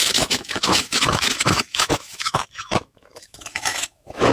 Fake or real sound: fake